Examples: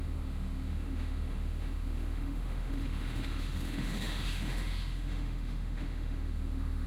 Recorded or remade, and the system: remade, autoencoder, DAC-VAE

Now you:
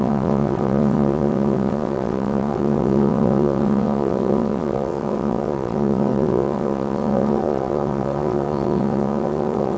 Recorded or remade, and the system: remade, vocoder, WaveNeXt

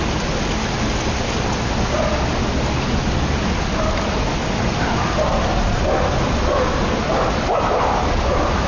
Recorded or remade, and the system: recorded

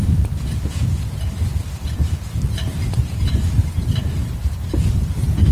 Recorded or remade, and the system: remade, vocoder, BigVGAN v2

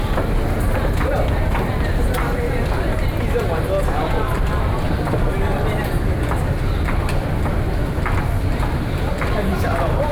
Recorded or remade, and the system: recorded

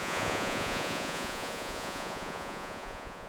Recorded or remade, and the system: remade, vocoder, Vocos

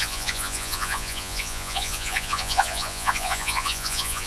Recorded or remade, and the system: remade, vocoder, Vocos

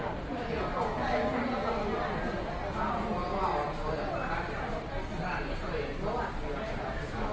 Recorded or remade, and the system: recorded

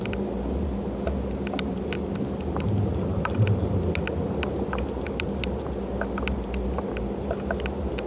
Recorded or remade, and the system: recorded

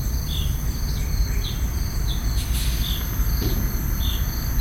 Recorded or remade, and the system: recorded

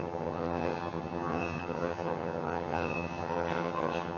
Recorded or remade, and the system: remade, vocoder, HiFi-GAN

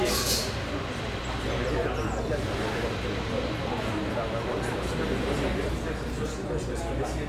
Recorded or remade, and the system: recorded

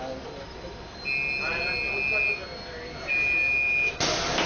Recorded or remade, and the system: recorded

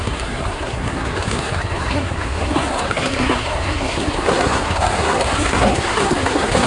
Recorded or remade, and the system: remade, codec, SNAC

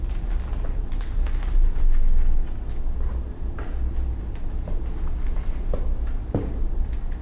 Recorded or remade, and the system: recorded